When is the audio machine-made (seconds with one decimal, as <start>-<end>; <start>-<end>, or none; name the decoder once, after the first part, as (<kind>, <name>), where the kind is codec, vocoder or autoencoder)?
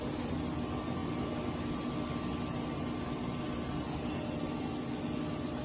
none